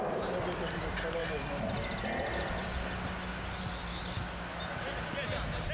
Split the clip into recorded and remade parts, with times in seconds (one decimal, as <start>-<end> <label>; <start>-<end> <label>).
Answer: 0.0-5.7 recorded